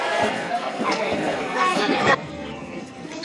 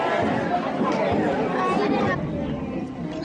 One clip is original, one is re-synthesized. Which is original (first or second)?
second